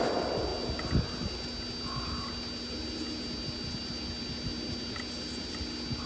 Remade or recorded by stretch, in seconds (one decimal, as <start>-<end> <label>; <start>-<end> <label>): 0.0-6.1 recorded